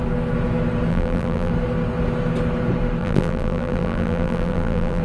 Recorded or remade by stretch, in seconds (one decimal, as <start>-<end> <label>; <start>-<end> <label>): 0.0-0.9 recorded; 0.9-1.5 remade; 1.5-3.0 recorded; 3.0-5.0 remade